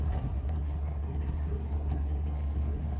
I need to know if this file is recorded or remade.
remade